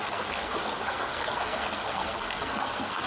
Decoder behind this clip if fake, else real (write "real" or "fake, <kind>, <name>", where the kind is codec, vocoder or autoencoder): fake, codec, SNAC